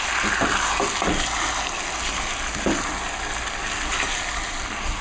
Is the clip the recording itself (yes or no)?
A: yes